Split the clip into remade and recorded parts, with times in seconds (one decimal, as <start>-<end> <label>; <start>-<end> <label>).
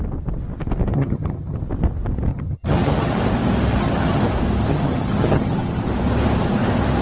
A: 0.0-0.9 recorded; 0.9-1.6 remade; 1.6-2.3 recorded; 2.3-3.2 remade; 3.2-3.7 recorded; 3.7-4.2 remade; 4.2-4.7 recorded; 4.7-5.8 remade; 5.8-7.0 recorded